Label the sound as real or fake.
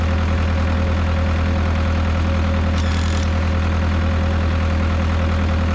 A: real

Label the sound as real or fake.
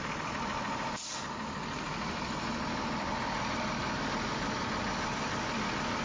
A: real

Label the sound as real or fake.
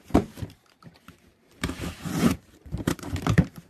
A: fake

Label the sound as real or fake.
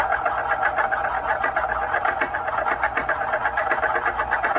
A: real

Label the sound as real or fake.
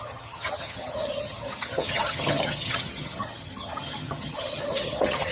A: fake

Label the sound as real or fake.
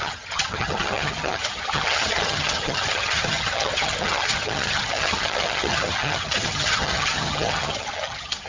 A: fake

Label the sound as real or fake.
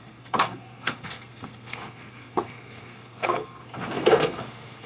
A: fake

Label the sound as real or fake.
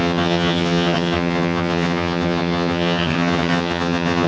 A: fake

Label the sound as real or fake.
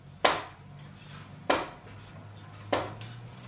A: real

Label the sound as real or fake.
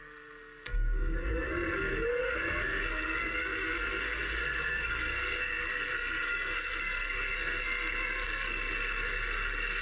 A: fake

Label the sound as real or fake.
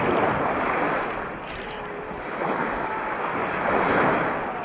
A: real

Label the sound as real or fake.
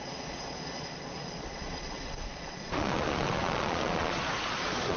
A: fake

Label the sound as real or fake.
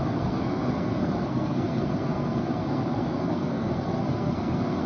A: fake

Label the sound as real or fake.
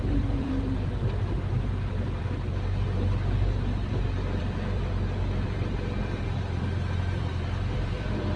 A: fake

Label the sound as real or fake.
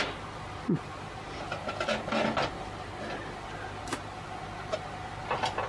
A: real